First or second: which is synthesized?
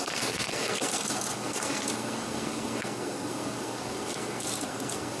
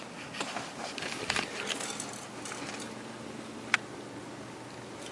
first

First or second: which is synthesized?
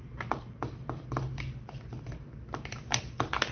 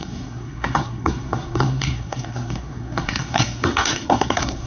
second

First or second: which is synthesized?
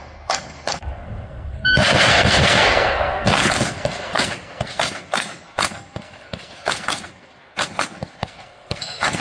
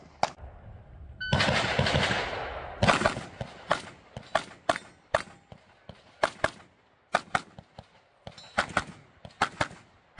first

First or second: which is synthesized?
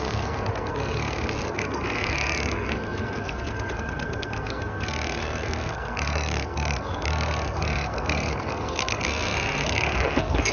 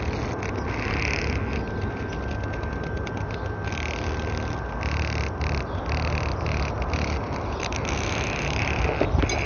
first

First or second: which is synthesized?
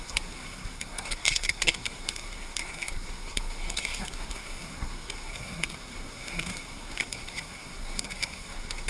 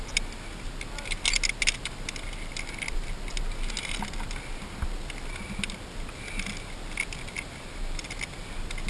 first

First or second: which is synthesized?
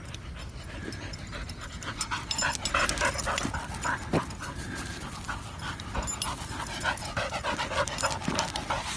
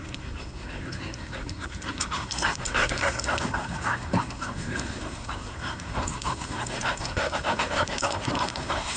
second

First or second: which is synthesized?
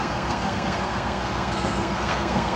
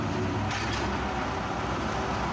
first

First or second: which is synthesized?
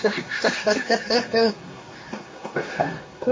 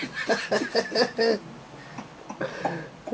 first